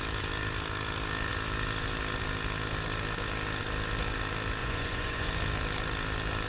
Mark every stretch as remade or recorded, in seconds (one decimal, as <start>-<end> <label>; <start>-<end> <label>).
0.0-4.6 recorded; 4.6-5.3 remade; 5.3-6.5 recorded